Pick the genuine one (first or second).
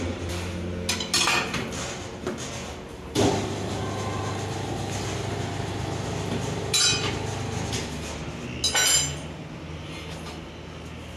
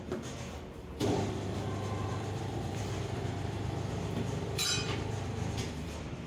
first